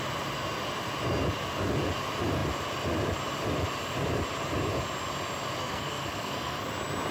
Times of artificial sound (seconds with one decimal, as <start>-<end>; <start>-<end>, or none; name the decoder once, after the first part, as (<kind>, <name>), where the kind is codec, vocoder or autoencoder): 5.6-6.6 (codec, SNAC)